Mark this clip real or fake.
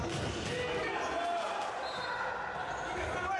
real